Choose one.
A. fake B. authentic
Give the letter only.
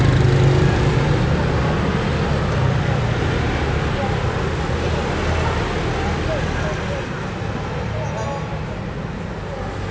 B